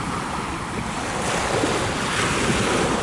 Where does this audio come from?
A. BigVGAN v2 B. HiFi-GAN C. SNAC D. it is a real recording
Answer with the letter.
D